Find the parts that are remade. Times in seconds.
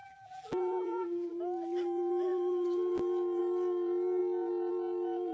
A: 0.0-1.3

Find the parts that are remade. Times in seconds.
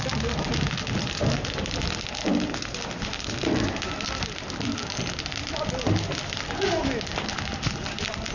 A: none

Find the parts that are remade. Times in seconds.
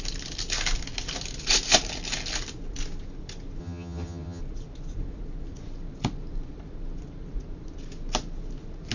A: 3.6-4.4